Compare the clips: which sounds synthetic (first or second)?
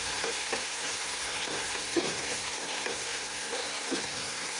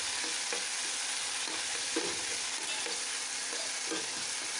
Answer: first